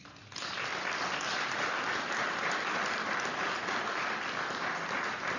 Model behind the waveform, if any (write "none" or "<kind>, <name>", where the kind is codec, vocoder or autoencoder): none